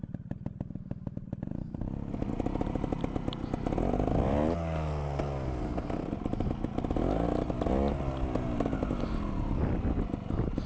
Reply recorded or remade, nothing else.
recorded